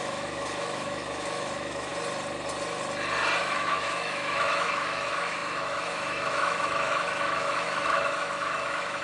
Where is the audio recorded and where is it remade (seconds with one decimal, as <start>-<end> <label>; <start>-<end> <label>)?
0.0-1.9 remade; 1.9-3.4 recorded; 3.4-9.0 remade